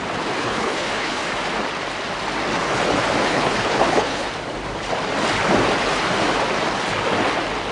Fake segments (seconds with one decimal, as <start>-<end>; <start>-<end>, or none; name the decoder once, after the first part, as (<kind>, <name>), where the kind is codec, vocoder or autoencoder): 0.4-1.2 (codec, HILCodec); 3.3-4.3